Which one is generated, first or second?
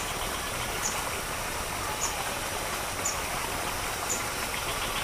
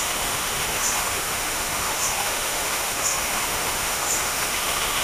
second